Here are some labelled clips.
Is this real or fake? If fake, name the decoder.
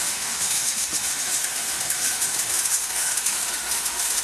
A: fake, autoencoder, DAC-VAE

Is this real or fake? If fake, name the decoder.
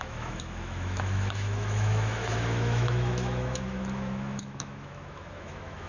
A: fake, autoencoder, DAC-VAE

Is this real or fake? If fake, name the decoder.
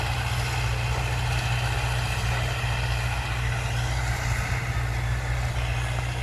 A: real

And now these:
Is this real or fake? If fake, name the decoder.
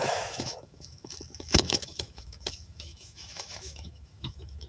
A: fake, autoencoder, DAC-VAE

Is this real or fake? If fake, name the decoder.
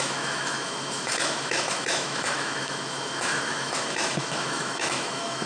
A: fake, autoencoder, DAC-VAE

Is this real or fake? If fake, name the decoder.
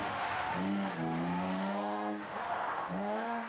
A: fake, autoencoder, DAC-VAE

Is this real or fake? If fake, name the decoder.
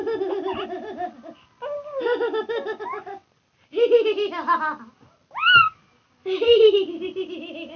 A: real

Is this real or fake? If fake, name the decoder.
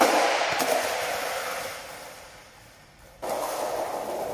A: real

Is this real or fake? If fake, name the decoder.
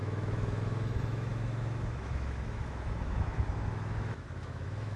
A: fake, autoencoder, DAC-VAE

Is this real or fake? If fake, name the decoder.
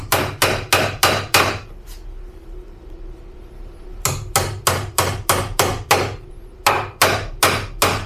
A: real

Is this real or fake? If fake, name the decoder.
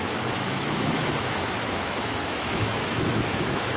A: fake, autoencoder, DAC-VAE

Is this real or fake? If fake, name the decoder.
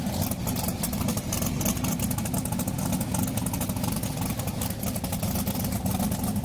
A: real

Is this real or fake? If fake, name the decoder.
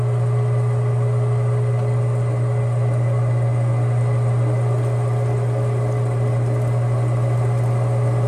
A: real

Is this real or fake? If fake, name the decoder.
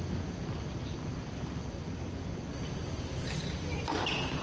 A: real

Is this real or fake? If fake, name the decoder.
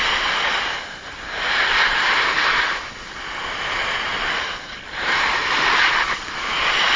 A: real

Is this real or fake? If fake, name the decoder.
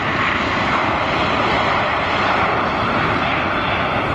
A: real